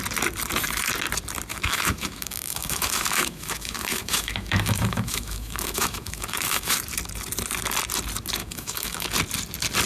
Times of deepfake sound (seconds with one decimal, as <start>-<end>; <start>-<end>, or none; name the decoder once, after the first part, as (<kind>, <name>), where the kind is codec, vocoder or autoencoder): 1.5-6.8 (autoencoder, DAC-VAE); 8.4-9.1